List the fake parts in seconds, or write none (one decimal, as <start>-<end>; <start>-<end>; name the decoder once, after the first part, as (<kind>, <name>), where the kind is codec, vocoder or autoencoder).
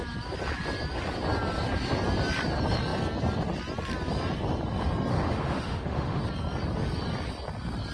5.1-6.2 (autoencoder, DAC-VAE)